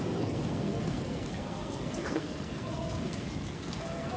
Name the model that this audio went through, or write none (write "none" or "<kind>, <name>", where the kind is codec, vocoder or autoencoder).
codec, SNAC